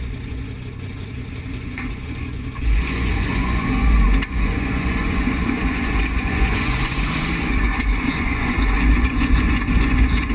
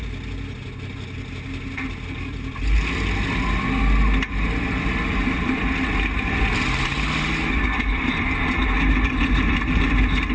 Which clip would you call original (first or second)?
second